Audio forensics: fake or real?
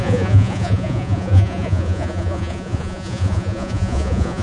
fake